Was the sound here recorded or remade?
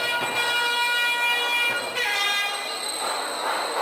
recorded